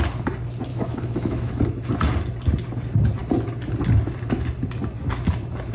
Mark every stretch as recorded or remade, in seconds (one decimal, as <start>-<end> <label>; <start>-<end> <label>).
0.0-0.7 recorded; 0.7-1.6 remade; 1.6-5.7 recorded